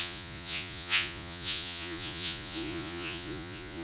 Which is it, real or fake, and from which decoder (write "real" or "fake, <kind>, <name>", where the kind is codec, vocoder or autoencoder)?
fake, vocoder, Vocos